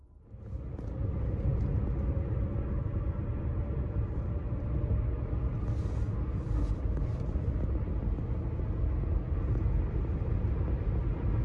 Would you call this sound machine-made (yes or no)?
no